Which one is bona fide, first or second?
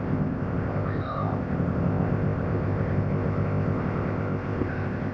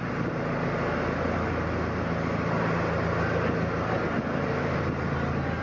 second